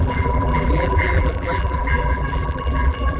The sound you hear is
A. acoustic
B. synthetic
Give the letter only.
B